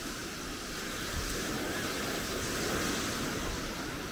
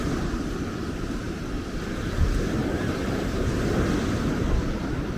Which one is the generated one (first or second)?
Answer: second